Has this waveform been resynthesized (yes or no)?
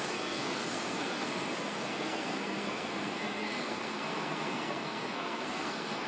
yes